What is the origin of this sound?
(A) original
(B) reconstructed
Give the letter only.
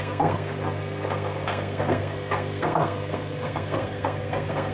B